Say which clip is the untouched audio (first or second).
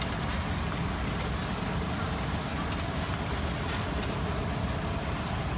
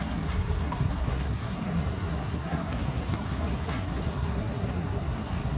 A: first